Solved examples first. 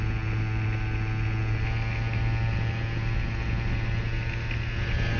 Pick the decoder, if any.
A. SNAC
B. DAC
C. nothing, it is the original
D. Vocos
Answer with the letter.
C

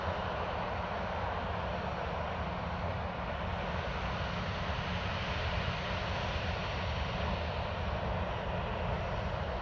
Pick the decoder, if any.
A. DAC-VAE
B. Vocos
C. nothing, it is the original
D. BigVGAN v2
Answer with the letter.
C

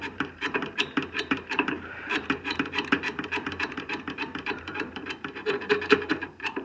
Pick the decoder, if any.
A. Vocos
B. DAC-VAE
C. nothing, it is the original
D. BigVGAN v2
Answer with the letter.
D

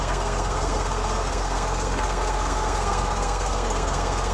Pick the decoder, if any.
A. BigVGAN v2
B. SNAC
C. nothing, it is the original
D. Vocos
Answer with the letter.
B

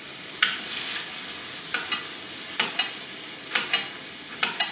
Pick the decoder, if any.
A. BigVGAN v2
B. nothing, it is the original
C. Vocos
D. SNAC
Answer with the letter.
B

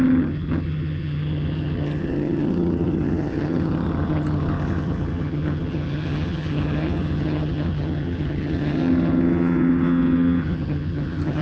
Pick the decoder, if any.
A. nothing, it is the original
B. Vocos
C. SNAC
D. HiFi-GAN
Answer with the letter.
D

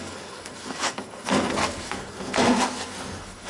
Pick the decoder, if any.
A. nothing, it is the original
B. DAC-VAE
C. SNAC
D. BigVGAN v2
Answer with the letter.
C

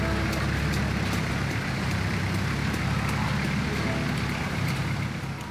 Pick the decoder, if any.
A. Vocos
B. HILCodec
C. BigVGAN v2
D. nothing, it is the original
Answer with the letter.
D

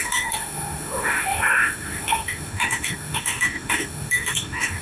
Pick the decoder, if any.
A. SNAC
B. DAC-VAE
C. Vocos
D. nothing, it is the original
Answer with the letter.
B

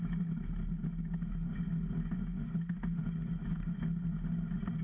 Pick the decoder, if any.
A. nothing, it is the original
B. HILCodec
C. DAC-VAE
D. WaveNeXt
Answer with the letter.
A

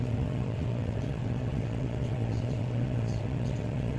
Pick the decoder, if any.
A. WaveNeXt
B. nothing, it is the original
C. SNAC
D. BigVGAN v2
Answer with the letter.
A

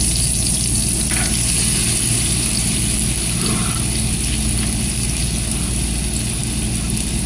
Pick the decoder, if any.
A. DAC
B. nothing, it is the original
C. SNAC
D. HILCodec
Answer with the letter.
B